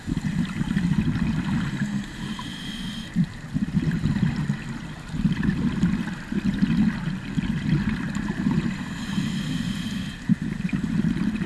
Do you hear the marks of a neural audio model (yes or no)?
no